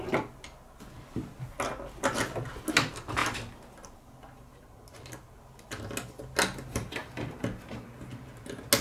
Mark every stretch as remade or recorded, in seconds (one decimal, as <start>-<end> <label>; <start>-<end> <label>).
0.0-8.8 recorded